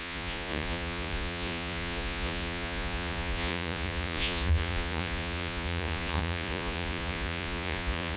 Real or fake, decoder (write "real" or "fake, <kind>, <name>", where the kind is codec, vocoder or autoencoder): fake, vocoder, Vocos